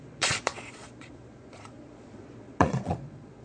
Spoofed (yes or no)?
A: yes